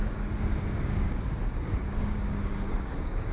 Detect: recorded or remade remade